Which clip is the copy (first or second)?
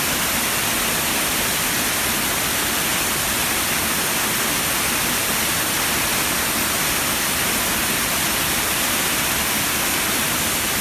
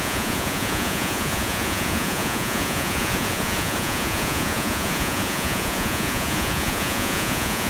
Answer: second